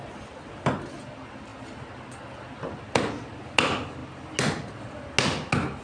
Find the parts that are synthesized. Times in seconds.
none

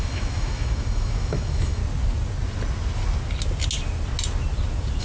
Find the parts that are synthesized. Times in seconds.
0.0-1.8 (autoencoder, DAC-VAE)

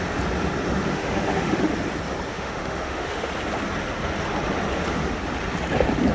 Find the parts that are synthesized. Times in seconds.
0.9-1.7 (autoencoder, DAC-VAE); 2.3-3.3

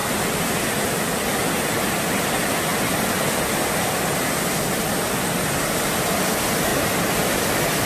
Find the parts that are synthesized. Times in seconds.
none